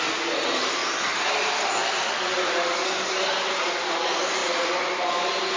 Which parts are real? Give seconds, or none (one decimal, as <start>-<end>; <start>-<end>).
0.0-5.6